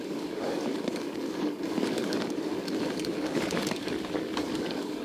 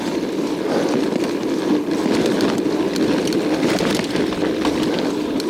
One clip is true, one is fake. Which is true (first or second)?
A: second